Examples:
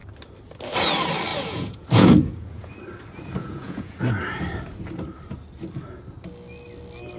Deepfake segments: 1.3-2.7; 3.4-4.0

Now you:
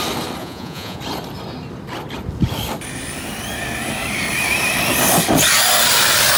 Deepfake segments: 0.4-1.0